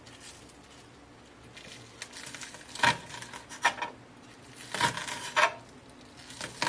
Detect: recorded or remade recorded